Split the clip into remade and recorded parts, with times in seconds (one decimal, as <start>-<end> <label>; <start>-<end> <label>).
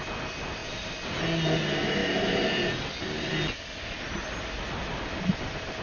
0.0-5.8 recorded